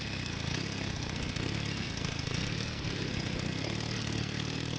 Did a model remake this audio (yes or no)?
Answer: yes